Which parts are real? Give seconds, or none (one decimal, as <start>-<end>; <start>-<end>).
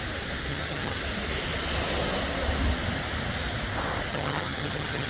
0.0-0.5; 1.0-4.1